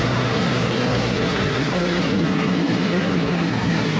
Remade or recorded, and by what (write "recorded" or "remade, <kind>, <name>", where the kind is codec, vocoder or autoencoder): remade, codec, SNAC